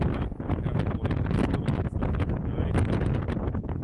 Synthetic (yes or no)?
no